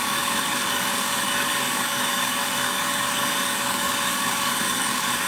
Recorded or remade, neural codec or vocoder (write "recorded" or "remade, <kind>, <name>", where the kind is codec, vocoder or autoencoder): remade, codec, DAC